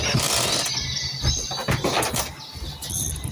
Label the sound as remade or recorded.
recorded